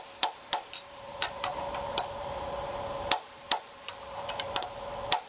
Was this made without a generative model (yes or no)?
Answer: no